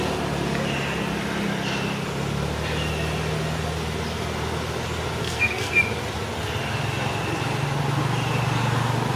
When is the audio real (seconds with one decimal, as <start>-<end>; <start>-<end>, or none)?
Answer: 0.0-5.2; 5.8-9.2